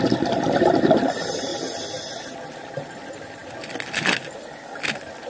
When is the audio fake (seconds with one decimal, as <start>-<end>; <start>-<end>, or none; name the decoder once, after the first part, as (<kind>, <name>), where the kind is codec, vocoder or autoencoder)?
0.0-1.5 (vocoder, BigVGAN v2); 2.1-3.4